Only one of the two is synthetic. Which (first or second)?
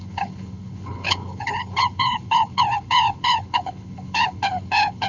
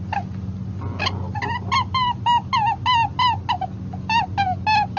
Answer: first